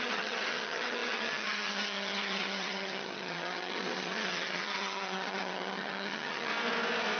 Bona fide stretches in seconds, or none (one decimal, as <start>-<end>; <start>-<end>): 6.5-7.2